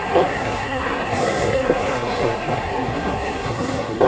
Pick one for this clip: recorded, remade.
remade